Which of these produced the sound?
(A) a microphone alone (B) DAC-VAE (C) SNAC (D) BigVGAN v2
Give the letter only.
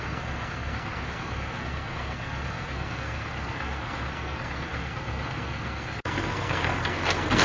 C